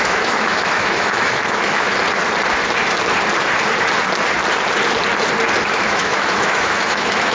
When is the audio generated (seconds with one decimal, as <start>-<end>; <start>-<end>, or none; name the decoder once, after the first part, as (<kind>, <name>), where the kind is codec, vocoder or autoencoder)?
0.0-1.9 (autoencoder, DAC-VAE); 5.7-7.3